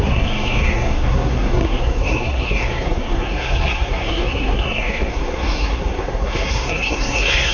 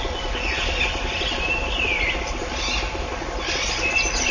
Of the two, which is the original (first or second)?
second